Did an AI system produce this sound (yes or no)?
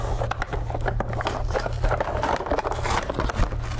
no